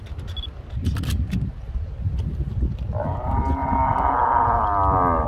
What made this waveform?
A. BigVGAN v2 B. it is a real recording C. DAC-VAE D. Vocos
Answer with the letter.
B